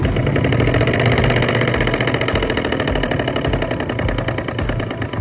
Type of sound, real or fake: real